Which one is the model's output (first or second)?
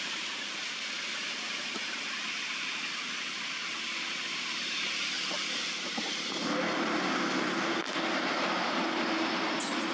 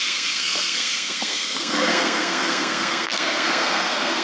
second